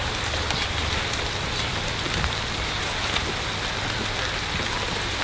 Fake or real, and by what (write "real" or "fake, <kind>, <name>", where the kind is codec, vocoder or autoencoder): real